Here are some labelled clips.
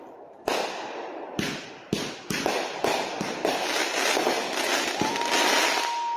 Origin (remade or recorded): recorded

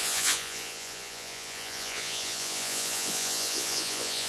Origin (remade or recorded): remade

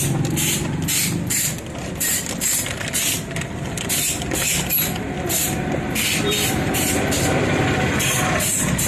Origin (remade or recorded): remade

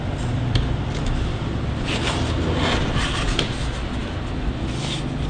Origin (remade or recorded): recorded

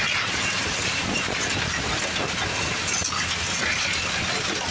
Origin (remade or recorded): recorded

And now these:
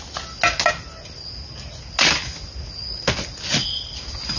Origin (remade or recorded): recorded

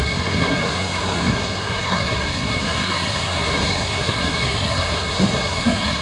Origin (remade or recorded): remade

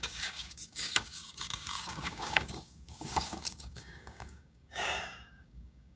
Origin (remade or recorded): remade